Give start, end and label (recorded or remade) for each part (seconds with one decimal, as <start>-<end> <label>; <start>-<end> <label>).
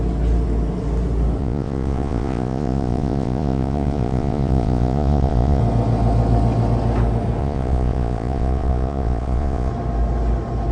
0.0-1.4 recorded; 1.4-5.6 remade; 5.6-7.4 recorded; 7.4-9.7 remade; 9.7-10.7 recorded